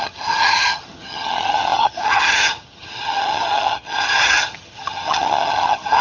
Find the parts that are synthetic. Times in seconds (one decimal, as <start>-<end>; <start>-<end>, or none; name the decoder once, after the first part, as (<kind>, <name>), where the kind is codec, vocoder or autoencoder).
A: 0.0-6.0 (vocoder, HiFi-GAN)